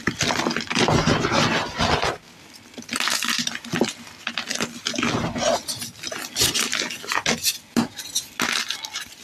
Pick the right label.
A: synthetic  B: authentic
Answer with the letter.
B